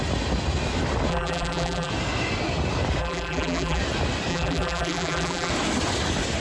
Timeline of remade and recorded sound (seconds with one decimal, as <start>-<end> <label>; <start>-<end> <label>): 0.0-1.1 recorded; 1.1-1.9 remade; 1.9-3.0 recorded; 3.0-3.8 remade; 3.8-4.3 recorded; 4.3-5.5 remade; 5.5-6.4 recorded